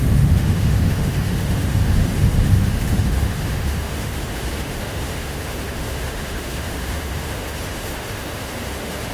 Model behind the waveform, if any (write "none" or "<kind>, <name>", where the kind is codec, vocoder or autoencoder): autoencoder, DAC-VAE